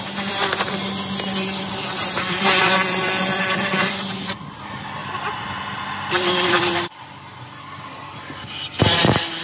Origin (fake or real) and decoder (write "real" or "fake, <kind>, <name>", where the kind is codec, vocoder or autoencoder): real